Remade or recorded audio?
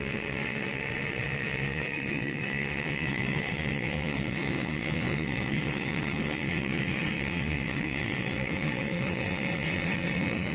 remade